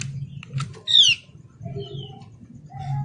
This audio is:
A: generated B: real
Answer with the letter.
B